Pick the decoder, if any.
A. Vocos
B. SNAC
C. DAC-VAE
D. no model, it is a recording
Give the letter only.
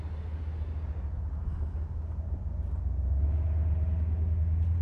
D